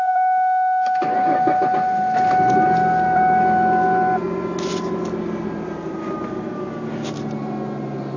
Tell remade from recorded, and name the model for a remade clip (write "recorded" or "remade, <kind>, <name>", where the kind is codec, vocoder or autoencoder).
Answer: recorded